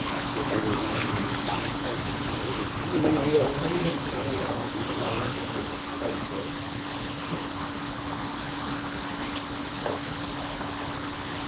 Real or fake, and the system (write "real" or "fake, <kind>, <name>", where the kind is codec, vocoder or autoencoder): fake, codec, HILCodec